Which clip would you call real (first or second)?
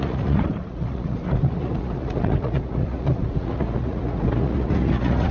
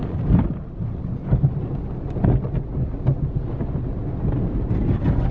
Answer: second